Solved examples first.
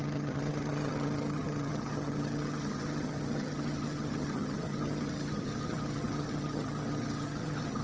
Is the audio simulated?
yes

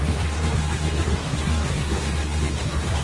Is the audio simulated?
yes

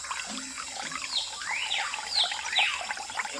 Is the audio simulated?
no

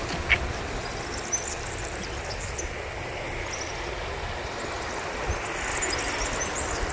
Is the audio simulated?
no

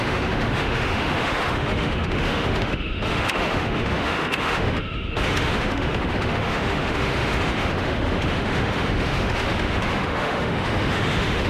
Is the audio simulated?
yes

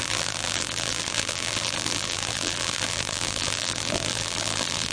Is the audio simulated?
yes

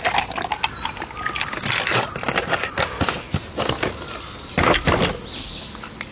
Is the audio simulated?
no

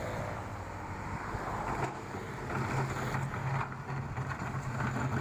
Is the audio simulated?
no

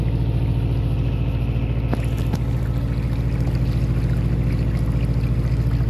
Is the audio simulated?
no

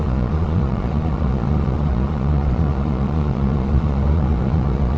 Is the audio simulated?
yes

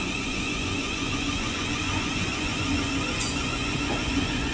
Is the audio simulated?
yes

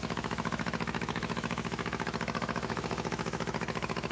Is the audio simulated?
yes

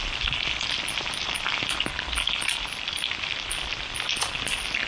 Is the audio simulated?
no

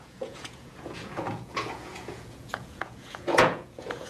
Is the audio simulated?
yes